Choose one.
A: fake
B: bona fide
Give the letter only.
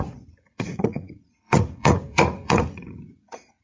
A